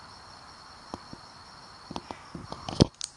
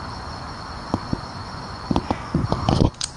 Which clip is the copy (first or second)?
second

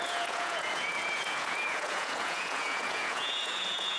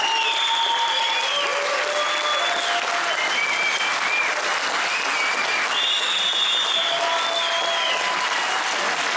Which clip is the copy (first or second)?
first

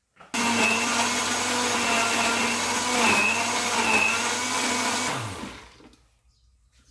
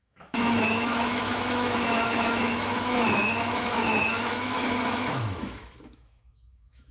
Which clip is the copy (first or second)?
second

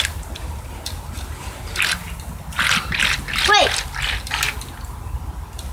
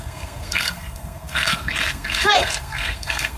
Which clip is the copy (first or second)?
second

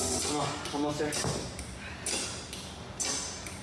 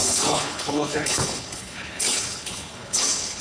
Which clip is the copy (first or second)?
second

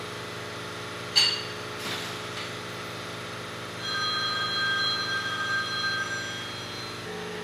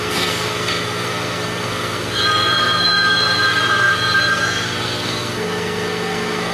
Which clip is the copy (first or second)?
second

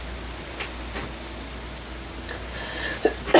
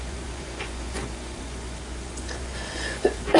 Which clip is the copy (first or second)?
second